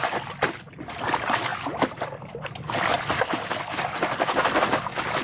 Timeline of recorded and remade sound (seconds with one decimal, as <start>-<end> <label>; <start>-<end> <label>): 0.0-5.2 recorded